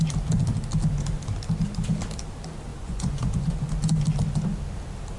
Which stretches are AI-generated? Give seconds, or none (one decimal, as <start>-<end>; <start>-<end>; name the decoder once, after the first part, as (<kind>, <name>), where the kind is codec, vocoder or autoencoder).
2.7-3.7 (vocoder, Vocos)